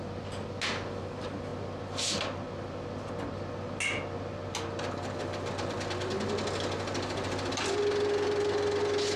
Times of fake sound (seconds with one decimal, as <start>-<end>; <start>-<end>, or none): none

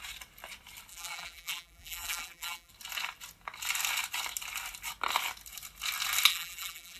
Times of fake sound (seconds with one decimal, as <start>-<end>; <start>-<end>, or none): 0.9-2.7; 6.3-7.0